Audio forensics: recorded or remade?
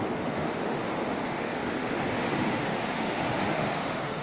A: remade